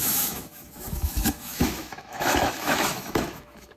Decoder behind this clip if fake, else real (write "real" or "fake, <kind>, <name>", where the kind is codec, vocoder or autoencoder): fake, autoencoder, DAC-VAE